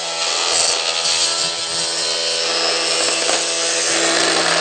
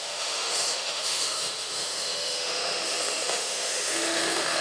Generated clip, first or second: second